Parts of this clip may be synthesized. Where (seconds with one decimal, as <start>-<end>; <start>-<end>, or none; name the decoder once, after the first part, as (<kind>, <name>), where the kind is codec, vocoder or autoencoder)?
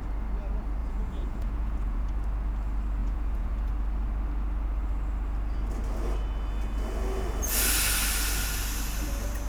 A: 0.8-2.1 (vocoder, Vocos); 3.0-3.7